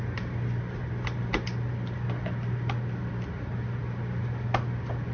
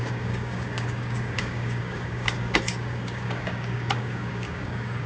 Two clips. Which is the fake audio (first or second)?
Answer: second